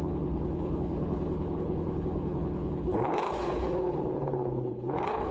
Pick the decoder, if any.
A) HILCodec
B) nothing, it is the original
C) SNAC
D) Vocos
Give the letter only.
A